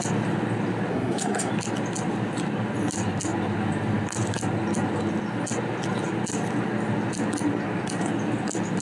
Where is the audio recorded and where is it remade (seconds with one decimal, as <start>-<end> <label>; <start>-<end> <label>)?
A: 0.0-0.9 recorded; 0.9-1.5 remade; 1.5-8.8 recorded